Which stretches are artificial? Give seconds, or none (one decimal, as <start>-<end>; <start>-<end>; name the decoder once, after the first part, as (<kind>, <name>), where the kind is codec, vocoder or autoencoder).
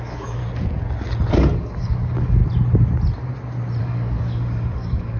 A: 0.0-0.4 (codec, DAC); 1.3-2.4; 3.8-5.2